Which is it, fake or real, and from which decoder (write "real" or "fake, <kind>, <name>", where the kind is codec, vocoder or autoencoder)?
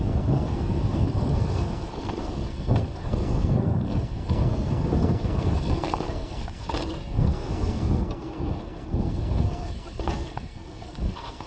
fake, codec, SNAC